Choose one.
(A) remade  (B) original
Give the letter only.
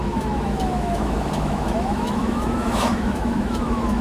A